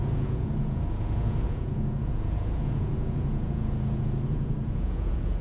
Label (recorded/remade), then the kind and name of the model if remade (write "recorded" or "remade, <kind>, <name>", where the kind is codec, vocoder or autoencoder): remade, vocoder, Vocos